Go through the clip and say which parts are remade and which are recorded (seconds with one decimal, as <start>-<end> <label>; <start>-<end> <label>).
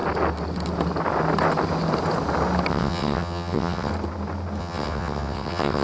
0.0-2.7 recorded; 2.7-3.9 remade; 3.9-4.6 recorded; 4.6-5.8 remade